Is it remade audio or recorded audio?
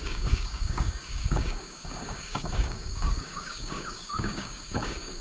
remade